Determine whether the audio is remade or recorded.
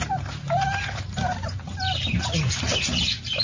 recorded